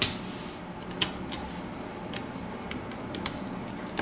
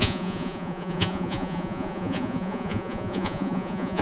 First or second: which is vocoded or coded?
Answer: second